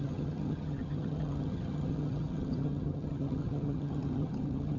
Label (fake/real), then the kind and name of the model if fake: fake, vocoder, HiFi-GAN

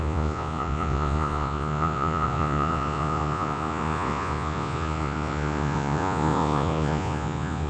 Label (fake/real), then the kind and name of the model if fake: fake, vocoder, Vocos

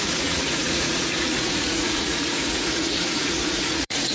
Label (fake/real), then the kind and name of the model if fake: fake, vocoder, Vocos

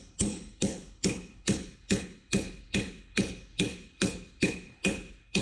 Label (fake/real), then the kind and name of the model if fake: fake, codec, HILCodec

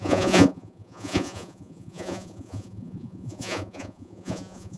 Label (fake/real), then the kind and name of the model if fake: fake, vocoder, Vocos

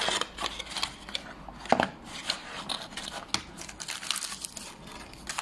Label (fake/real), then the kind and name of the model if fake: real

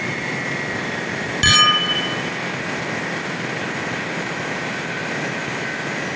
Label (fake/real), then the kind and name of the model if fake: real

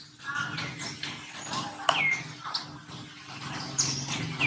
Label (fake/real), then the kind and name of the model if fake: real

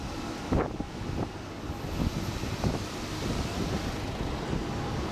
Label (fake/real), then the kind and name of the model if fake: real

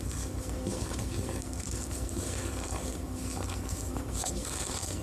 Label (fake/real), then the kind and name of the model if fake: fake, codec, SNAC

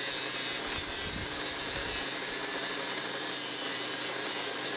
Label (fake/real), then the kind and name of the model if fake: real